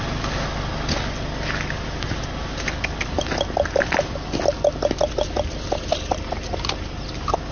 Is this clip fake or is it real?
real